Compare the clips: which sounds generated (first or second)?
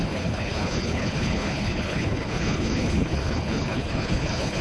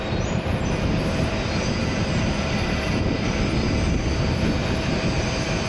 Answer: first